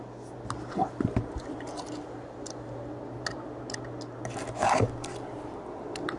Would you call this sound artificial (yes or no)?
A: no